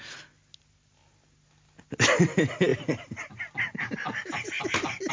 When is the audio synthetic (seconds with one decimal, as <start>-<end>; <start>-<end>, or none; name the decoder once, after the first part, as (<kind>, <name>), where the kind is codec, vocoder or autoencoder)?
none